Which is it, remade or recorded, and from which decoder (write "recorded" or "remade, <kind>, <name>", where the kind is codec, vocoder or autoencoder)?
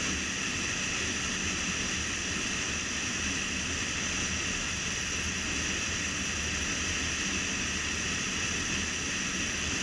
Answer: recorded